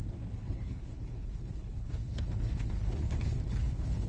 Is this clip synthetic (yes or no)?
yes